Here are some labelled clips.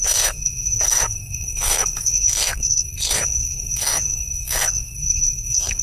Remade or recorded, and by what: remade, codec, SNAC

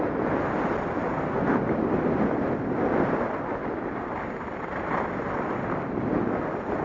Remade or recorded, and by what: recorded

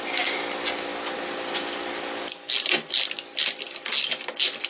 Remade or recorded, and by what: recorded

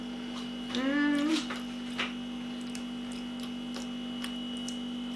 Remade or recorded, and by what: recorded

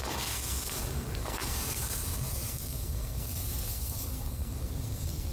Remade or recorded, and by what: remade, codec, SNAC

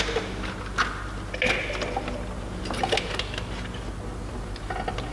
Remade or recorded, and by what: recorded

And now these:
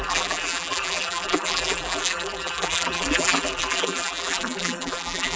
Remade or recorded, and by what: remade, vocoder, BigVGAN v2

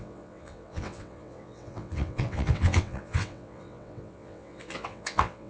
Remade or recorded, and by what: remade, vocoder, WaveNeXt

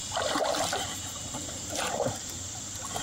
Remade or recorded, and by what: remade, vocoder, BigVGAN v2